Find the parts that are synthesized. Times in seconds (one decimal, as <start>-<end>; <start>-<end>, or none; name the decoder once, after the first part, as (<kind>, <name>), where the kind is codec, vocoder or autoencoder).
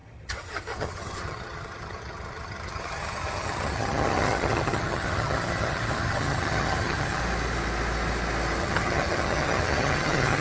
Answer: 0.0-7.2 (vocoder, HiFi-GAN); 8.6-10.4